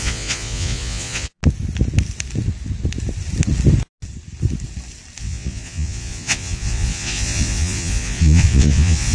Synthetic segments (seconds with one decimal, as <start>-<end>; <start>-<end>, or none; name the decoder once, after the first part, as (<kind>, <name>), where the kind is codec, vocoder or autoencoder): 0.0-1.4 (vocoder, Vocos); 5.2-9.1